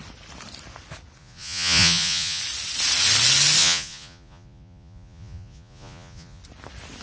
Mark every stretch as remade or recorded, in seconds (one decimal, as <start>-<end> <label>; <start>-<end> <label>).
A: 0.0-1.2 recorded; 1.2-2.4 remade; 2.4-3.6 recorded; 3.6-6.4 remade; 6.4-7.0 recorded